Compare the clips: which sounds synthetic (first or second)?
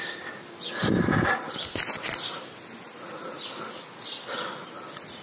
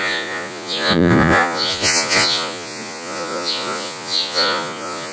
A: second